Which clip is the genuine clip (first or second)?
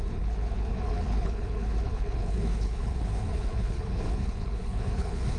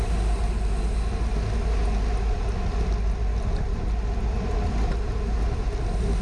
second